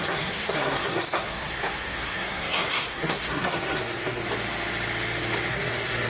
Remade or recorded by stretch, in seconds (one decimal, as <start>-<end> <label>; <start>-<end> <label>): 0.0-4.2 remade; 4.2-5.5 recorded; 5.5-6.1 remade